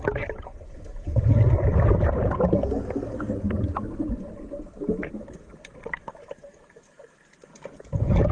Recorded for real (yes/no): yes